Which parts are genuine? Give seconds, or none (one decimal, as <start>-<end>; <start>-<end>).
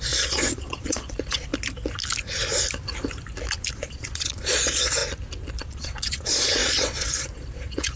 1.5-3.7; 5.0-5.6